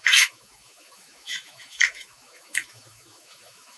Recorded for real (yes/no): no